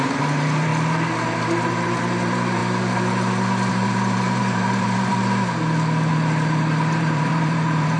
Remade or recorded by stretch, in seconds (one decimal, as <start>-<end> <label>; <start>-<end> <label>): 0.0-0.7 remade; 0.7-1.3 recorded; 1.3-2.6 remade; 2.6-3.7 recorded; 3.7-5.2 remade; 5.2-6.1 recorded; 6.1-8.0 remade